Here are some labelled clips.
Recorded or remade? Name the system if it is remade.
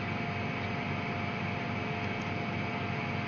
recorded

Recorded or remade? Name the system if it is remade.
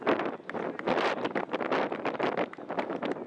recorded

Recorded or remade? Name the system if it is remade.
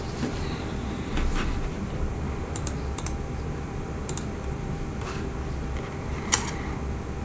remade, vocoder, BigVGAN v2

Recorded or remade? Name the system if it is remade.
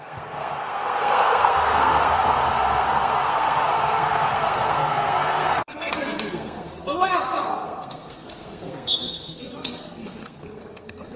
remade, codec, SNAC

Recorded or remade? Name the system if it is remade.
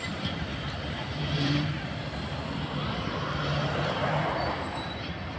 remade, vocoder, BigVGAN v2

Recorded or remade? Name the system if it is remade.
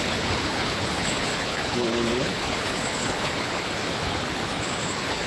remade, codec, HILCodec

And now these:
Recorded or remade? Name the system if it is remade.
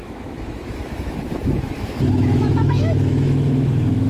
remade, autoencoder, DAC-VAE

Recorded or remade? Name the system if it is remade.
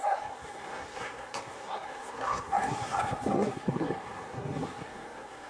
remade, codec, SNAC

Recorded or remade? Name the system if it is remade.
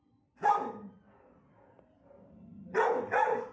recorded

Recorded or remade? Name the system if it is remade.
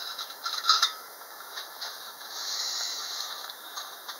remade, autoencoder, DAC-VAE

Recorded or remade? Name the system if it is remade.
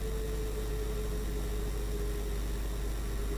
recorded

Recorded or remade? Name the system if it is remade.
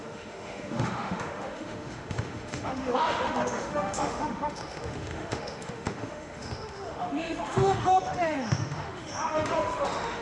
remade, autoencoder, DAC-VAE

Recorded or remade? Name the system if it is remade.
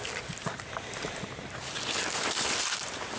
recorded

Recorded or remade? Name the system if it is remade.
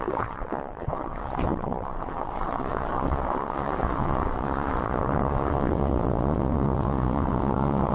remade, vocoder, WaveNeXt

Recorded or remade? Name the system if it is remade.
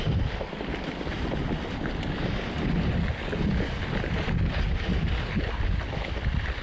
recorded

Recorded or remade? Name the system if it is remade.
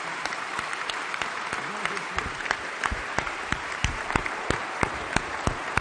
remade, vocoder, BigVGAN v2